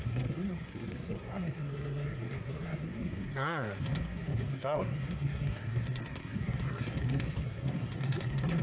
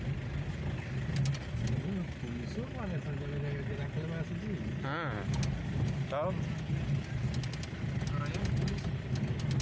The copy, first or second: first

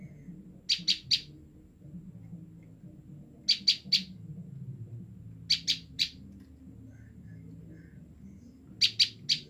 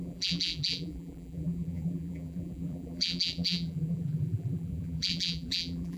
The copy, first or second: second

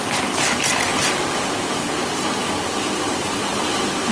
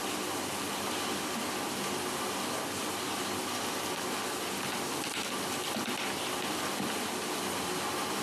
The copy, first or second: first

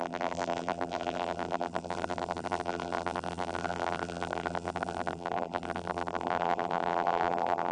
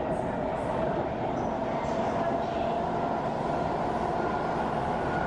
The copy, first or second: first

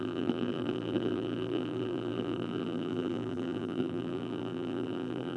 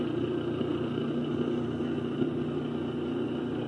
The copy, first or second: first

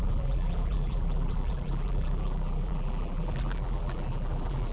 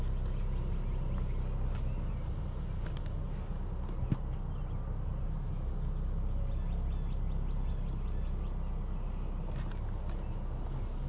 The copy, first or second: first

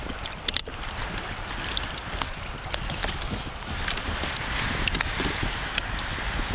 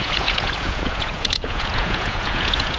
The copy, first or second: second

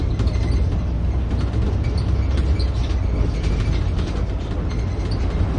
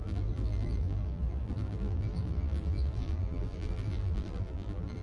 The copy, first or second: second